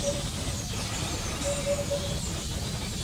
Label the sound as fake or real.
real